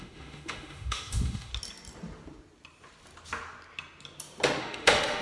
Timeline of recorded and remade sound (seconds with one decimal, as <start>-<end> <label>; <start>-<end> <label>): 0.0-1.5 remade; 1.5-4.6 recorded; 4.6-5.2 remade